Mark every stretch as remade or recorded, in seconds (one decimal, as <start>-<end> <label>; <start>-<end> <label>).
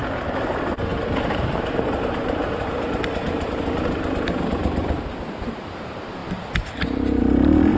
0.0-7.8 remade